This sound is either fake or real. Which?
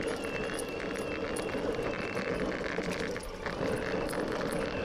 real